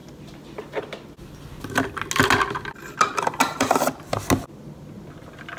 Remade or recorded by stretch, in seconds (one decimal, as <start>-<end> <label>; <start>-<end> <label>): 0.0-5.6 recorded